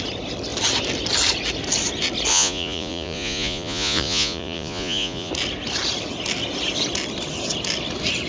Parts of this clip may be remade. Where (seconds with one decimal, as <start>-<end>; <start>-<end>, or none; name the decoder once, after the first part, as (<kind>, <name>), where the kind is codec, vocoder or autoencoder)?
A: 2.3-5.3 (vocoder, Vocos)